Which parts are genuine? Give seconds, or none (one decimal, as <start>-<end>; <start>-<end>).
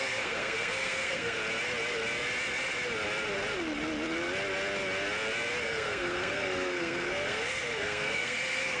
1.4-5.6